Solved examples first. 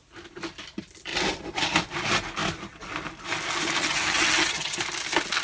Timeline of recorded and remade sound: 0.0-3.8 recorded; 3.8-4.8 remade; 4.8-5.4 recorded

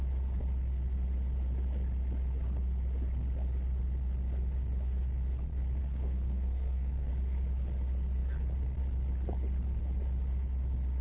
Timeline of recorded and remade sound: 0.0-5.8 recorded; 5.8-7.1 remade; 7.1-11.0 recorded

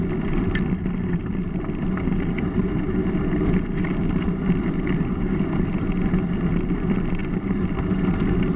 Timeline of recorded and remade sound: 0.0-8.6 recorded

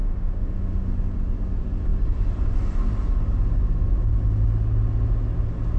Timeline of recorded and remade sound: 0.0-0.9 remade; 0.9-5.8 recorded

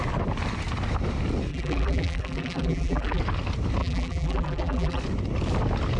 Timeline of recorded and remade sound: 0.0-1.5 recorded; 1.5-3.2 remade; 3.2-3.8 recorded; 3.8-5.0 remade; 5.0-6.0 recorded